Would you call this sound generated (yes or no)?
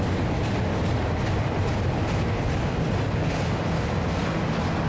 no